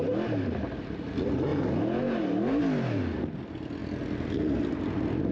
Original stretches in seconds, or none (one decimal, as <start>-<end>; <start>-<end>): 0.0-5.3